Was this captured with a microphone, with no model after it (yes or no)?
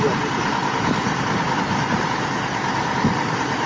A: yes